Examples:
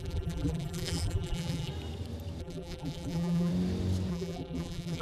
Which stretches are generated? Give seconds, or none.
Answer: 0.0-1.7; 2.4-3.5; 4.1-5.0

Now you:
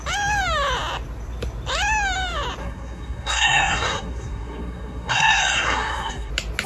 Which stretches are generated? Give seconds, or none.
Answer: 2.6-6.3

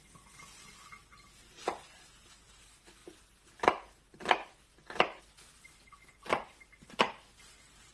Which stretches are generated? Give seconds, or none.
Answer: none

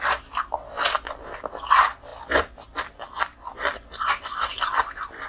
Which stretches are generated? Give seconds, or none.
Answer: none

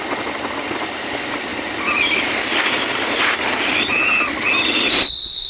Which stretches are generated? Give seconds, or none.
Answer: 1.5-4.8

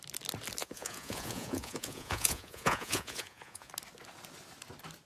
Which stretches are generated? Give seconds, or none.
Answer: 0.6-3.7

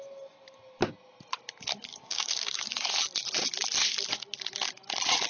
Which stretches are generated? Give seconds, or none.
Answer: 1.9-2.9

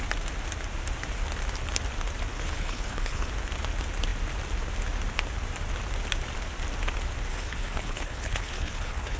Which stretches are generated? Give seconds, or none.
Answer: 2.3-3.3; 7.3-9.2